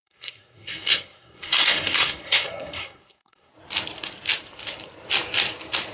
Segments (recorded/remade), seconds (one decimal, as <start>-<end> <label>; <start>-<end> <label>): 0.0-3.5 remade; 3.5-5.9 recorded